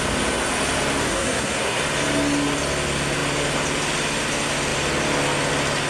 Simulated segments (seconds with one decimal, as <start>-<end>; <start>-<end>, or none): 1.0-1.8